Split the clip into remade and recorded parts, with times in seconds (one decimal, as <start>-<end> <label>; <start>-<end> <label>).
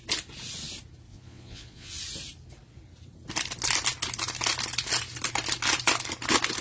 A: 0.0-1.1 recorded; 1.1-1.9 remade; 1.9-6.6 recorded